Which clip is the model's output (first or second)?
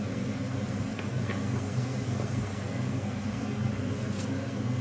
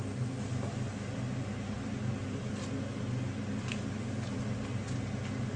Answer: first